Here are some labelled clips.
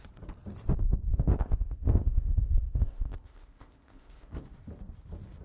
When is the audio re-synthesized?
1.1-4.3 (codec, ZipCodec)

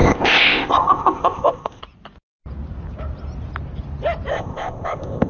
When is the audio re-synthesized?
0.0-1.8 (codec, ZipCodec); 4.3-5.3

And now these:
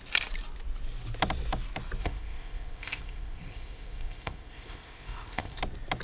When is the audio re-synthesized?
2.0-5.6 (codec, ZipCodec)

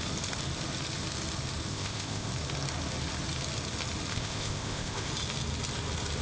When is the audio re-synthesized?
1.7-2.3 (codec, ZipCodec); 4.1-5.1

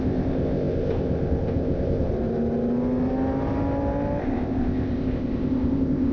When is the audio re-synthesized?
0.0-2.1 (codec, ZipCodec); 4.2-6.1